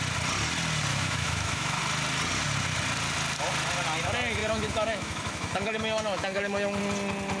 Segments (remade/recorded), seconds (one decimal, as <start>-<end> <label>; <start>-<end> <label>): 0.0-0.9 recorded; 0.9-1.8 remade; 1.8-4.4 recorded; 4.4-6.8 remade; 6.8-7.4 recorded